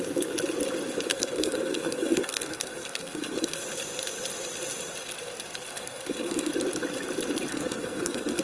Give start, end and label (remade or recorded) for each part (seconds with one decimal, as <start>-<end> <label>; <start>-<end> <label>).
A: 0.0-1.1 recorded; 1.1-3.6 remade; 3.6-5.7 recorded; 5.7-6.5 remade; 6.5-7.5 recorded; 7.5-8.4 remade